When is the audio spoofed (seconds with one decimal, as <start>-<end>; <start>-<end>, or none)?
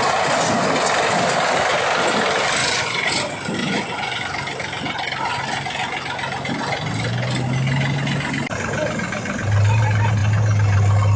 2.6-3.1; 3.6-4.2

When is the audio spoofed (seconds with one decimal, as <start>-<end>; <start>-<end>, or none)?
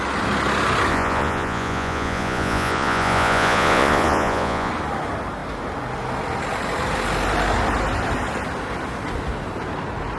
0.9-4.7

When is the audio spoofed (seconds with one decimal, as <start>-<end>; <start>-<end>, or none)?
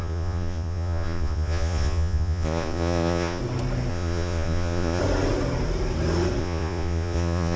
0.0-3.4; 3.9-5.0; 6.4-7.6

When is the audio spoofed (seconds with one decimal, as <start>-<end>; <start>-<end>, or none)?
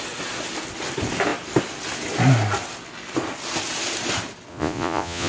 4.5-5.3